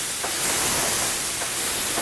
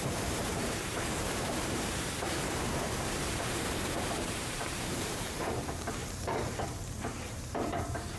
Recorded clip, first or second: first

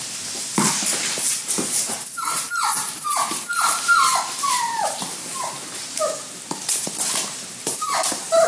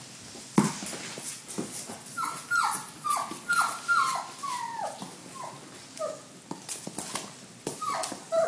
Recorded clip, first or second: second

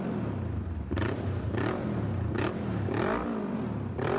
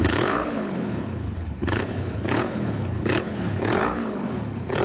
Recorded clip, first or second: first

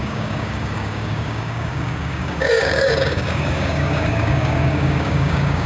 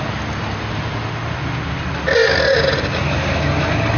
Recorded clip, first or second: second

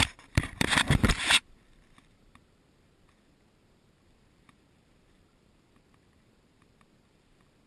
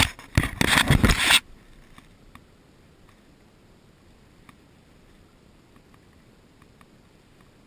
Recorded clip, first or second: second